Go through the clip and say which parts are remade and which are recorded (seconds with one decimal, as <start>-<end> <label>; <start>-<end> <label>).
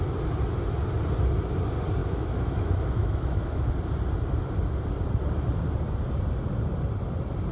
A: 0.0-2.0 recorded; 2.0-3.7 remade; 3.7-7.5 recorded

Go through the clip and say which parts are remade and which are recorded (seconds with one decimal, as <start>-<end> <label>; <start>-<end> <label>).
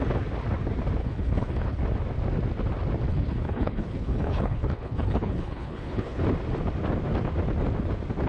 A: 0.0-1.0 recorded; 1.0-1.8 remade; 1.8-3.1 recorded; 3.1-6.2 remade; 6.2-8.3 recorded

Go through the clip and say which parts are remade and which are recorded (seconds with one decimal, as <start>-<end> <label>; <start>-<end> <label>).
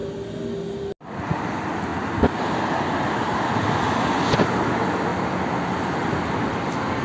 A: 0.0-7.0 recorded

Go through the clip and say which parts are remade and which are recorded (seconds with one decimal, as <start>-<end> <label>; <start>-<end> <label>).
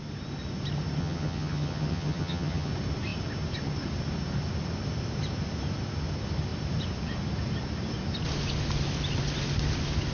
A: 0.0-1.0 recorded; 1.0-2.7 remade; 2.7-10.1 recorded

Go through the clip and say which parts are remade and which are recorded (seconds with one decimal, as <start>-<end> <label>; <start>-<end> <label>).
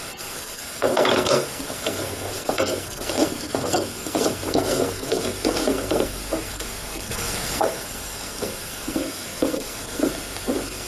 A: 0.0-10.9 remade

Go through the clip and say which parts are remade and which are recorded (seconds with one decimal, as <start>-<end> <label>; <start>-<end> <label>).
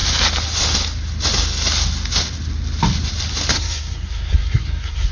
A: 0.0-3.5 recorded; 3.5-5.1 remade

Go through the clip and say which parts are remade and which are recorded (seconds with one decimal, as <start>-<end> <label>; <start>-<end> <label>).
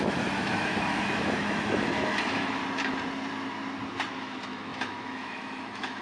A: 0.0-2.6 remade; 2.6-4.1 recorded; 4.1-6.0 remade